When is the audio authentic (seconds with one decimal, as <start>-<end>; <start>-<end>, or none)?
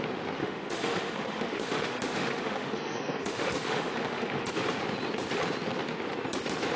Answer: 0.0-0.4; 4.5-6.8